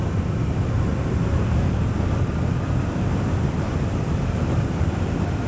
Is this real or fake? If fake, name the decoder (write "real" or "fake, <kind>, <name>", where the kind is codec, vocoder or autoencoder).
fake, vocoder, BigVGAN v2